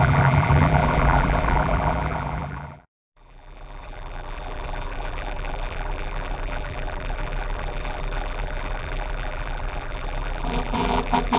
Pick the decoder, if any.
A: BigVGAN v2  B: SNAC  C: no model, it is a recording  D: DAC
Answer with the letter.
A